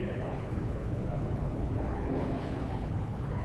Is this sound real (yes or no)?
no